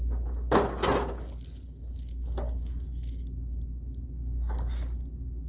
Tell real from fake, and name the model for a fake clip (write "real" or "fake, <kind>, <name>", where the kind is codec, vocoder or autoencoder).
real